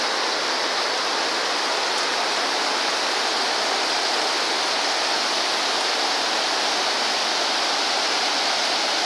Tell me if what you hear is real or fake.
real